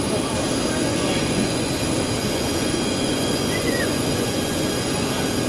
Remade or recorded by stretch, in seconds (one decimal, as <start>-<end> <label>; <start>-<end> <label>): 0.0-0.8 recorded; 0.8-1.7 remade; 1.7-2.2 recorded; 2.2-5.1 remade; 5.1-5.5 recorded